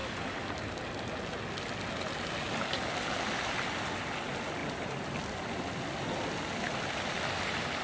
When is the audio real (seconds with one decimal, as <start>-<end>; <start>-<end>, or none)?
0.0-7.8